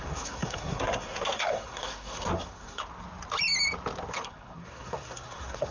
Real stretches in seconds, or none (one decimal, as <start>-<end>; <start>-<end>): 2.8-4.1